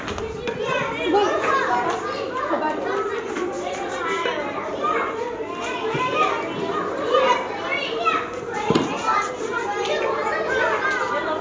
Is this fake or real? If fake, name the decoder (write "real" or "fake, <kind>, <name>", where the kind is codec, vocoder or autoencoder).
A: real